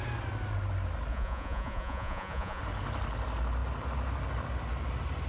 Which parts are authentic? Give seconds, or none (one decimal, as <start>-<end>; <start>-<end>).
0.0-1.1; 2.6-5.3